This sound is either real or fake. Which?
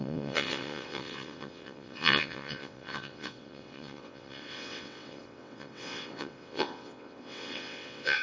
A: fake